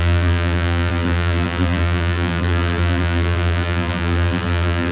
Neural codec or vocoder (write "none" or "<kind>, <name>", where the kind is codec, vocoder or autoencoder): vocoder, BigVGAN v2